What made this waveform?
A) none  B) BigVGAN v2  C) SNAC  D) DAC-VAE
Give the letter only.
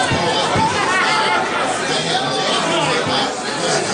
A